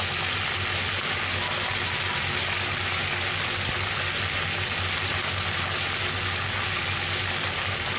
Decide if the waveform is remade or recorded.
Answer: recorded